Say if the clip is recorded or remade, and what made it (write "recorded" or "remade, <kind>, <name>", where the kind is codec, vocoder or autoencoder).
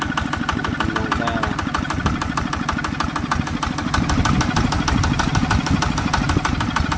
recorded